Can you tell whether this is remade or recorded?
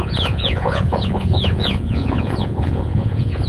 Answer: remade